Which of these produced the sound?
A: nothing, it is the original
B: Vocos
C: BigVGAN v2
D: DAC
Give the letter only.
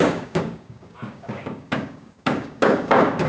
D